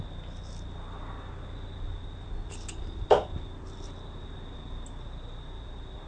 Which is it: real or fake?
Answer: real